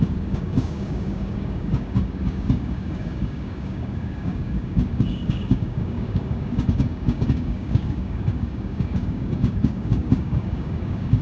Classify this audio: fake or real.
fake